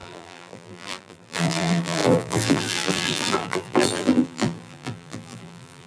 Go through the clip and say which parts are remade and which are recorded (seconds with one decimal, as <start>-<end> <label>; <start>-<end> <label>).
0.0-5.9 remade